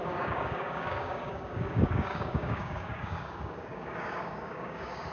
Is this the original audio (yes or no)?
no